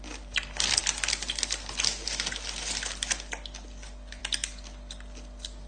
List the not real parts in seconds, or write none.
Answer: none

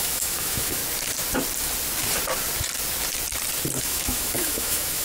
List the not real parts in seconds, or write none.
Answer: 0.0-0.8; 3.8-5.0

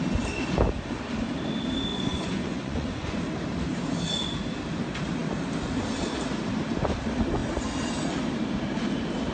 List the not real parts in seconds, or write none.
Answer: 1.9-3.2